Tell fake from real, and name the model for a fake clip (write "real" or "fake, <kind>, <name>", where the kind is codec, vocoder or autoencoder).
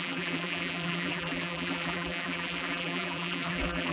fake, vocoder, BigVGAN v2